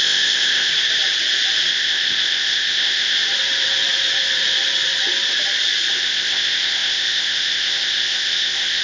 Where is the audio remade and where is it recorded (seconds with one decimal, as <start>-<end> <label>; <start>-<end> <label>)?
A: 0.0-0.7 remade; 0.7-1.7 recorded; 1.7-3.2 remade; 3.2-5.9 recorded; 5.9-8.8 remade